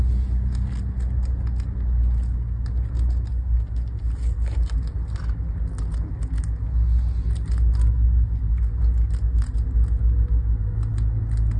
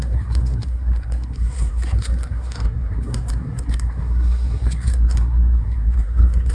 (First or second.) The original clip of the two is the first